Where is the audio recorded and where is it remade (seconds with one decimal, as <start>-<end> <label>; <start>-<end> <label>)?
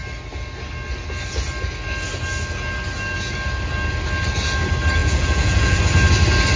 0.0-5.0 recorded; 5.0-5.8 remade; 5.8-6.6 recorded